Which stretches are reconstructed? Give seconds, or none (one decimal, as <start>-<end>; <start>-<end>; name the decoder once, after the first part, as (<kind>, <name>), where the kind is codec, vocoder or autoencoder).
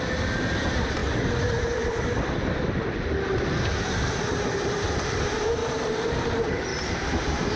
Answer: 5.6-6.1 (vocoder, BigVGAN v2); 6.7-7.6